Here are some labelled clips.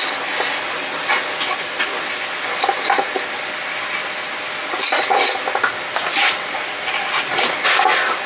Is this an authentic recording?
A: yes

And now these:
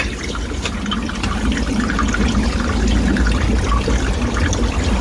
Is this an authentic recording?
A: yes